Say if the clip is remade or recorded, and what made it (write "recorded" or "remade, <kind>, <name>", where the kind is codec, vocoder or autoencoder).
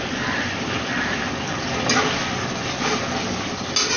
recorded